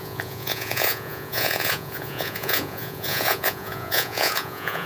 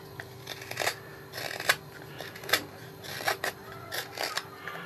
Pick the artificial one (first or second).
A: first